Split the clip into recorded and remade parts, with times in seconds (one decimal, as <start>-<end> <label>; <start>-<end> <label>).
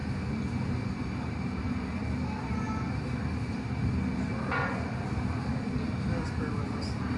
0.0-7.2 recorded